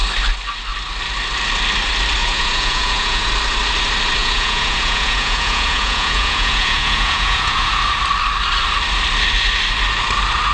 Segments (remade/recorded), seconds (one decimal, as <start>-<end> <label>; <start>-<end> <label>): 0.0-2.2 recorded; 2.2-3.3 remade; 3.3-4.2 recorded; 4.2-7.8 remade; 7.8-10.5 recorded